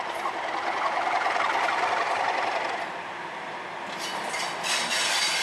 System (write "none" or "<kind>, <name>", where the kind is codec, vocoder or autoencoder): none